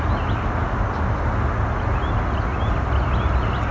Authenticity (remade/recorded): recorded